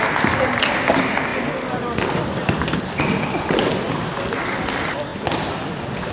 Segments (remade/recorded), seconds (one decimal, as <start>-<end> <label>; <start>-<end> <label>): 0.0-6.1 recorded